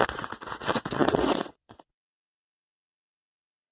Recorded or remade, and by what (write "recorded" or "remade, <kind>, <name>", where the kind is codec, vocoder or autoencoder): remade, vocoder, WaveNeXt